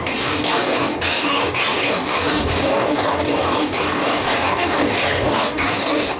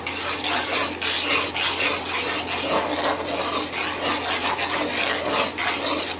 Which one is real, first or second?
second